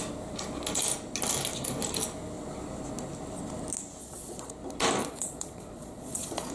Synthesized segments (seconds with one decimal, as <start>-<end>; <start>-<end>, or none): 4.0-4.5; 5.0-6.5